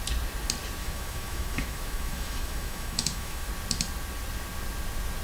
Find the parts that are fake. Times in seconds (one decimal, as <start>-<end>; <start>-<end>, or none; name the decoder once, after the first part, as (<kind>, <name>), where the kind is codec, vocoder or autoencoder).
0.8-3.5 (autoencoder, DAC-VAE)